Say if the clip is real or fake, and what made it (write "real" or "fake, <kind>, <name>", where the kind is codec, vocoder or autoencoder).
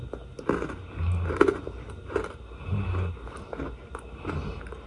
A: real